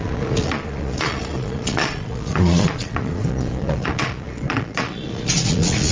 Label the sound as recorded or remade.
remade